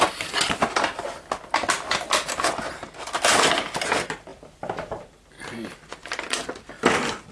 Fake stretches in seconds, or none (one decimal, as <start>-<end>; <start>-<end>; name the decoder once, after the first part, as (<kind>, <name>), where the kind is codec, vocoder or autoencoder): none